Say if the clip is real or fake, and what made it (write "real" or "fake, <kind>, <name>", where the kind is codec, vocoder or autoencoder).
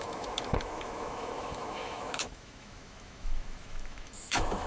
fake, autoencoder, DAC-VAE